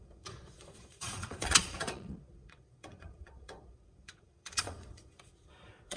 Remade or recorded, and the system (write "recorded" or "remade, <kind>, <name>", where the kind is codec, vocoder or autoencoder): remade, vocoder, Vocos